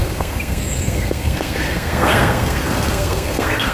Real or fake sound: fake